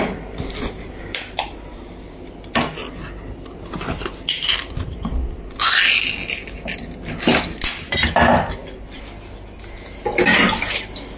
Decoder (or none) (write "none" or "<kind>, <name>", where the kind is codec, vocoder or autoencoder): none